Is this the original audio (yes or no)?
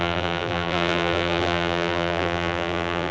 no